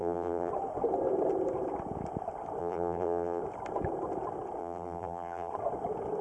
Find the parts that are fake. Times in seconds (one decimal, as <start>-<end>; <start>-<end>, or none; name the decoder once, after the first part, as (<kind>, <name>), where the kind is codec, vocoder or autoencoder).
0.0-0.5 (vocoder, BigVGAN v2); 2.6-3.4; 4.6-5.5